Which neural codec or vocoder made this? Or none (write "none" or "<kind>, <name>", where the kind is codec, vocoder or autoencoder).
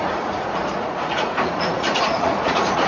vocoder, Vocos